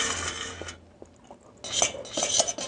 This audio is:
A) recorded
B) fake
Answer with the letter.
A